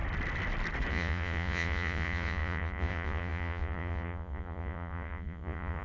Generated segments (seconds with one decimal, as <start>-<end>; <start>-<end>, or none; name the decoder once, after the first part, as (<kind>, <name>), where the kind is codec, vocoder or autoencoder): 0.9-5.8 (vocoder, Vocos)